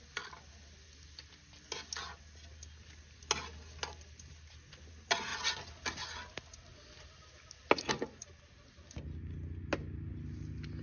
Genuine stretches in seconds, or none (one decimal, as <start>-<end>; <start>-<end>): 0.0-10.8